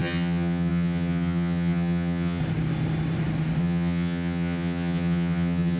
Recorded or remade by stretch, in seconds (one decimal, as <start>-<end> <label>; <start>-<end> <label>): 0.0-2.4 remade; 2.4-3.6 recorded; 3.6-5.8 remade